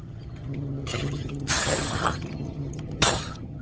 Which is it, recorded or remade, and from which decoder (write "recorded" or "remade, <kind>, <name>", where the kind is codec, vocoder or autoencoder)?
remade, vocoder, HiFi-GAN